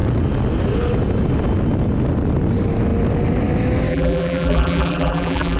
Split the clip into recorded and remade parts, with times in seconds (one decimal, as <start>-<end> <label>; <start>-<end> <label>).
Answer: 0.0-3.9 recorded; 3.9-5.6 remade